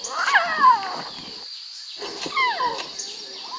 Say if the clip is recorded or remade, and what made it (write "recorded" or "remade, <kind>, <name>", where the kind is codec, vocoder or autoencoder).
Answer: recorded